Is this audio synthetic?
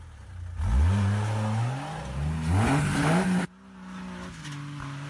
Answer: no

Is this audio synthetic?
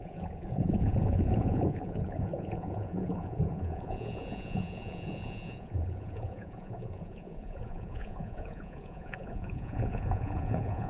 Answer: yes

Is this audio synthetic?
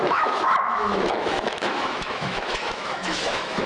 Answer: yes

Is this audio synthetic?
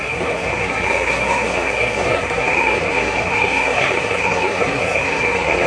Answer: yes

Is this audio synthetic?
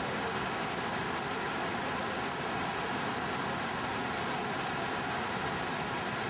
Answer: no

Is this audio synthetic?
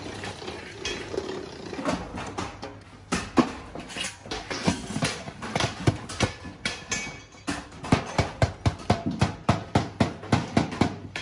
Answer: no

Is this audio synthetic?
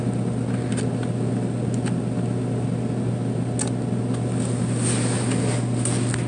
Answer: no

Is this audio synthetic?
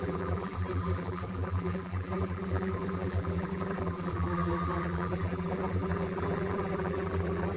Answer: yes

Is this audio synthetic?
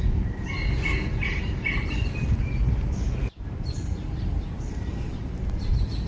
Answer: no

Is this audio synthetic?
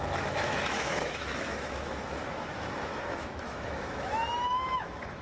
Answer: yes